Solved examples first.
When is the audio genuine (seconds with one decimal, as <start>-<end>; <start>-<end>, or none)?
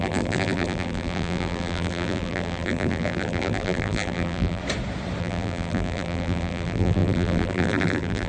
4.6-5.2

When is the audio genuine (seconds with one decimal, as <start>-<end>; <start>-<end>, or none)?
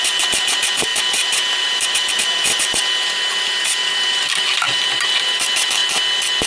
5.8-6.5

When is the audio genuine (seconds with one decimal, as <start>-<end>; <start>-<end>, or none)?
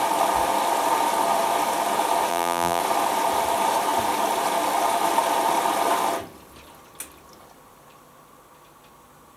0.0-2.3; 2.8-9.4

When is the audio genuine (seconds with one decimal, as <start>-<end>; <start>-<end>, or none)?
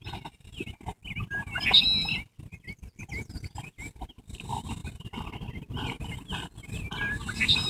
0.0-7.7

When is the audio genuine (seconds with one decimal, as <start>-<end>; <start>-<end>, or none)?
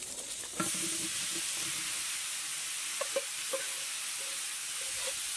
0.6-5.4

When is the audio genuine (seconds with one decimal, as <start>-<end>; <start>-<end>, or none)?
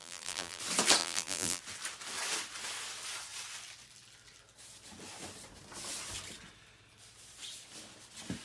0.6-1.0; 1.6-8.4